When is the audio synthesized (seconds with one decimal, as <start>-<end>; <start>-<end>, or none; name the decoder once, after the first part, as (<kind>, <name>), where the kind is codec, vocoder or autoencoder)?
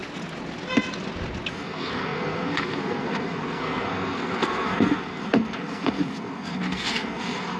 1.5-7.6 (codec, SNAC)